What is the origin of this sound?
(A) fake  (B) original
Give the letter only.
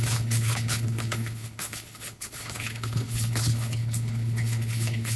A